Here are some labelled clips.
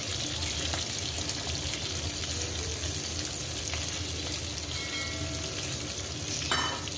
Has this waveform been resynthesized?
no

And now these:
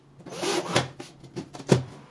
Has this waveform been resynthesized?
no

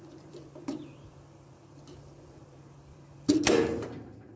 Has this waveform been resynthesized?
yes